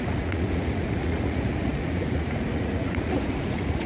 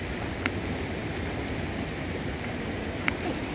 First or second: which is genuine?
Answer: second